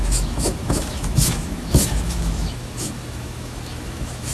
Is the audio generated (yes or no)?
yes